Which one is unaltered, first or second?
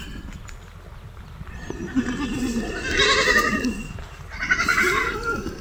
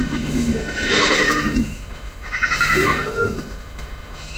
first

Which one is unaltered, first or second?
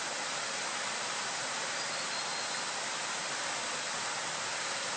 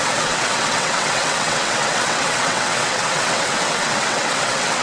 first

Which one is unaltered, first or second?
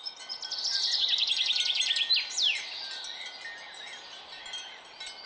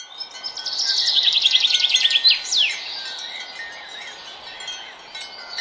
second